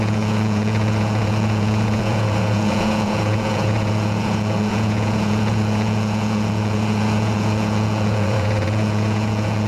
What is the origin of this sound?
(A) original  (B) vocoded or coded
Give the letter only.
B